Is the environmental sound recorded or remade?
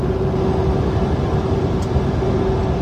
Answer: recorded